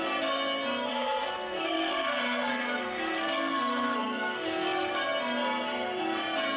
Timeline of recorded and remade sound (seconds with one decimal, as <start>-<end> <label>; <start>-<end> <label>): 0.0-0.9 recorded; 0.9-4.9 remade; 4.9-6.6 recorded